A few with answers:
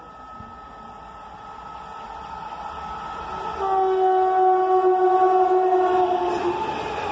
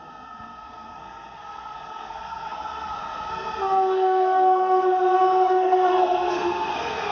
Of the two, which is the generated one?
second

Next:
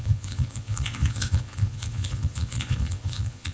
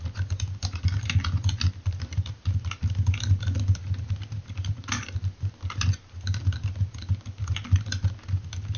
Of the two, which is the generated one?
first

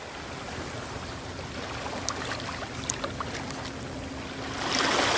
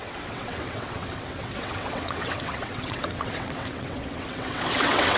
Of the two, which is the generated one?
second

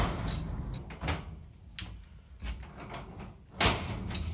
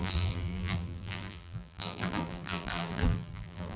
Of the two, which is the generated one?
second